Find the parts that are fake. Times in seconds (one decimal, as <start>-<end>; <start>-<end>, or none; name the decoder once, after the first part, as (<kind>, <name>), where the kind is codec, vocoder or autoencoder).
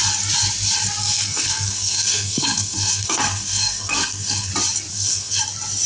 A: 1.0-4.5 (codec, SNAC); 4.9-5.4